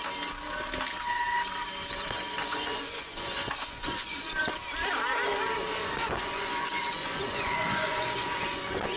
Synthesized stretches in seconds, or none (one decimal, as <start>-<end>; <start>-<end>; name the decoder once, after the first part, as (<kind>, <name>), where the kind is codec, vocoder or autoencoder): 2.4-4.2 (vocoder, Vocos); 5.8-9.0